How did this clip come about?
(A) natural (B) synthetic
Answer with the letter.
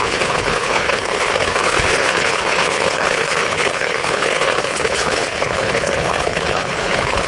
B